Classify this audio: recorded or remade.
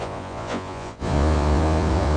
remade